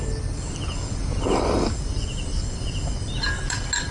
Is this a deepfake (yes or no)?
no